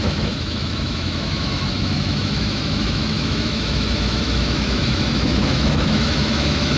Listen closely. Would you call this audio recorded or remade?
remade